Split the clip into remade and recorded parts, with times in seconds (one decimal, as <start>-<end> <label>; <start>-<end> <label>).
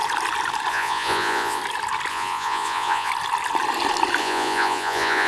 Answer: 0.0-0.7 recorded; 0.7-1.6 remade; 1.6-2.1 recorded; 2.1-3.1 remade; 3.1-4.2 recorded; 4.2-5.3 remade